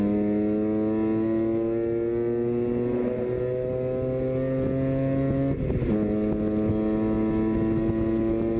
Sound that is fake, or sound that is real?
real